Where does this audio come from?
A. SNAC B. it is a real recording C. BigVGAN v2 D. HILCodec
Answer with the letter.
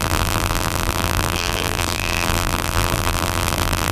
C